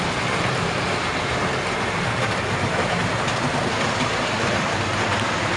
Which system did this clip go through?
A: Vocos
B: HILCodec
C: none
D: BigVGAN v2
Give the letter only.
C